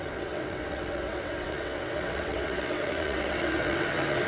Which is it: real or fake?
fake